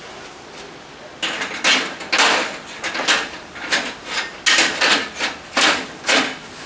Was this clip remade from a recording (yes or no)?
no